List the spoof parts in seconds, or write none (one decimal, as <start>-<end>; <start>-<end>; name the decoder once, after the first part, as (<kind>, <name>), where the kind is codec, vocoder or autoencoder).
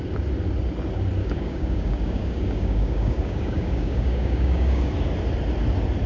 1.2-4.9 (codec, DAC)